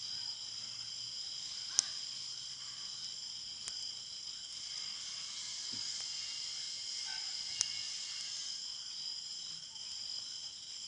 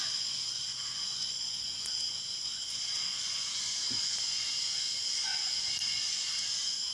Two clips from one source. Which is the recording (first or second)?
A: first